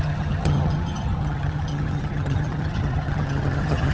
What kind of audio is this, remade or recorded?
remade